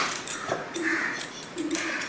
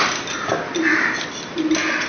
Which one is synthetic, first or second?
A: first